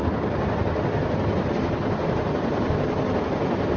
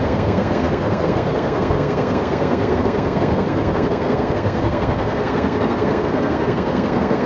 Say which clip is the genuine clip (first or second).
first